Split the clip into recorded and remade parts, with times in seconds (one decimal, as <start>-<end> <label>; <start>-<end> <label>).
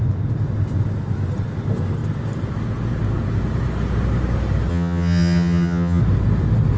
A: 0.0-4.7 recorded; 4.7-6.0 remade; 6.0-6.8 recorded